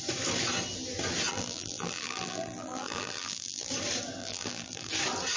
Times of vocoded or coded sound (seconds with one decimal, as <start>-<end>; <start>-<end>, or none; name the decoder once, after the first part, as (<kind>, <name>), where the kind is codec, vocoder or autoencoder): 1.3-3.7 (vocoder, BigVGAN v2); 4.2-4.9